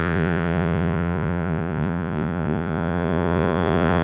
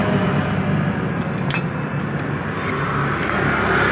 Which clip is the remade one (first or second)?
first